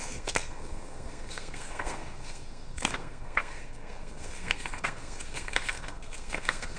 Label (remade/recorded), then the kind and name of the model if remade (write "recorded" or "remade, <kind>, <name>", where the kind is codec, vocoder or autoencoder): remade, codec, SNAC